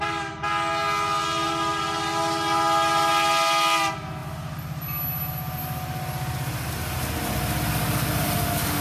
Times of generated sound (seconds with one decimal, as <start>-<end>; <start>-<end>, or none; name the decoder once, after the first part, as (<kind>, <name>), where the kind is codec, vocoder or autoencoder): none